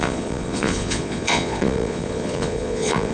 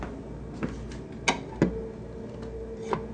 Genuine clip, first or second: second